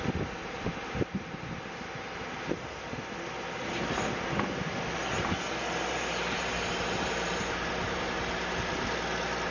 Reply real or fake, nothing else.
real